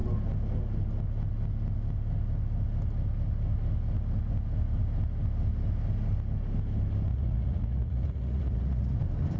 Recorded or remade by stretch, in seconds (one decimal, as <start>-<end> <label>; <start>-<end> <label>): 0.0-7.1 recorded; 7.1-9.0 remade; 9.0-9.4 recorded